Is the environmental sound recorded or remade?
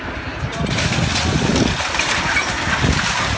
recorded